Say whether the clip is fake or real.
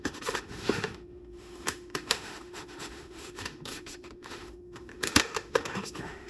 fake